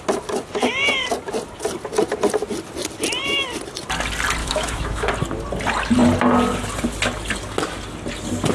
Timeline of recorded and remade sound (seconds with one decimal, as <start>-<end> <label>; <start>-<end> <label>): 0.0-4.4 recorded; 4.4-5.1 remade; 5.1-8.5 recorded

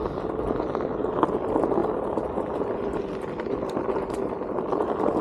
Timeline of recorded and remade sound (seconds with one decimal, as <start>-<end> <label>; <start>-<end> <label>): 0.0-5.2 recorded

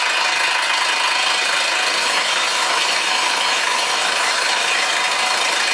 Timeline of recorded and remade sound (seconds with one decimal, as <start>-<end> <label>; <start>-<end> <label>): 0.0-2.0 recorded; 2.0-4.9 remade; 4.9-5.7 recorded

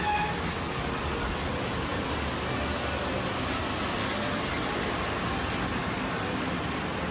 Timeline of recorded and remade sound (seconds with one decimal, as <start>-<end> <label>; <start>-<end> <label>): 0.0-7.1 recorded

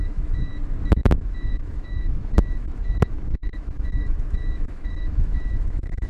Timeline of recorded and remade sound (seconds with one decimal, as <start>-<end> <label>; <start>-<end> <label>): 0.0-0.5 remade; 0.5-1.2 recorded; 1.2-6.1 remade

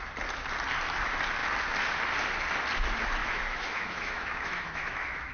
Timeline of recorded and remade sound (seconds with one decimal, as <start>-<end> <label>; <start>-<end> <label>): 0.0-3.2 recorded; 3.2-5.3 remade

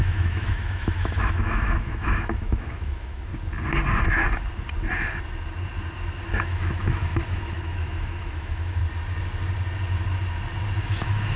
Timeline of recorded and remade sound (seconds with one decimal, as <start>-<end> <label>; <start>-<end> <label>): 0.0-3.3 remade; 3.3-6.4 recorded; 6.4-8.8 remade; 8.8-10.8 recorded; 10.8-11.4 remade